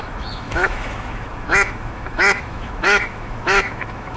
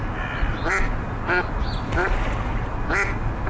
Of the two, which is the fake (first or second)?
first